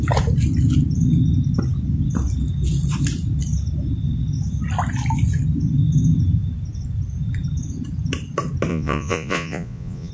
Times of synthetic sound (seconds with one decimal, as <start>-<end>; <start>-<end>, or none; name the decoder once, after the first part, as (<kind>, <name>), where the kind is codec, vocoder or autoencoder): 8.7-10.1 (vocoder, Vocos)